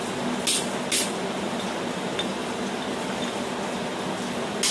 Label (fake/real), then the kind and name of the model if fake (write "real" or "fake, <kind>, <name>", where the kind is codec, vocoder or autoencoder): real